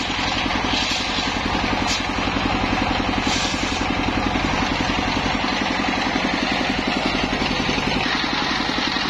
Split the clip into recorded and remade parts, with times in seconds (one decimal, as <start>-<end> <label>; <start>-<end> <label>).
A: 0.0-9.1 recorded